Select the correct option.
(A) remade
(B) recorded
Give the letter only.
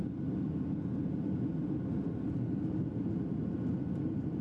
B